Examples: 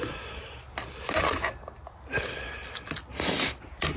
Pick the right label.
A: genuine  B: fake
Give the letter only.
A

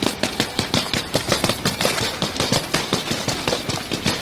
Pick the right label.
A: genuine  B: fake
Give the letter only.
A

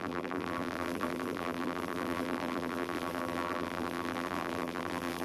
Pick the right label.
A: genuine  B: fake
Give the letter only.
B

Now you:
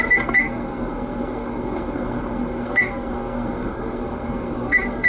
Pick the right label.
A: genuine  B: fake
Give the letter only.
B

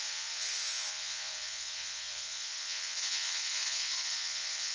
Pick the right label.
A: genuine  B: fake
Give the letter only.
B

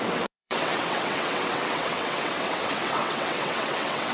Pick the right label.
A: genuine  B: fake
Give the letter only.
B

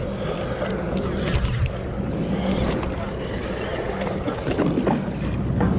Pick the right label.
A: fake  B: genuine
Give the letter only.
B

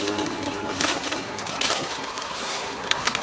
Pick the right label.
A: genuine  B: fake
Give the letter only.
B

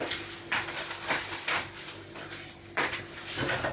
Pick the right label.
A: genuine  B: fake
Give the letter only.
A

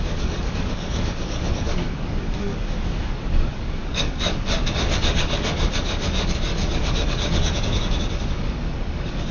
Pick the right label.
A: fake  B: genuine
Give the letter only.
A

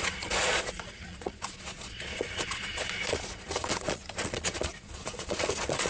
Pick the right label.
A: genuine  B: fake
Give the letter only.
B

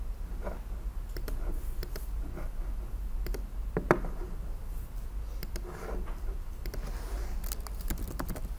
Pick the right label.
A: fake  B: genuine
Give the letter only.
B